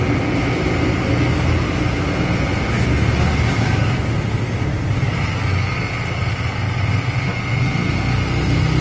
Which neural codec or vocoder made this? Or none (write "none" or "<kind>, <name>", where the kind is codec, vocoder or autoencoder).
none